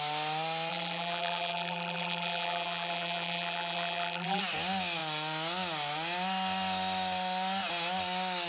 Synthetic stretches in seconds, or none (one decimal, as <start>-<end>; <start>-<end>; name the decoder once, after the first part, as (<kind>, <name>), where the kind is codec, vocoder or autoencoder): 0.7-4.4 (vocoder, BigVGAN v2)